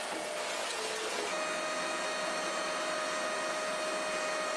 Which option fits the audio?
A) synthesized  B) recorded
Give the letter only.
B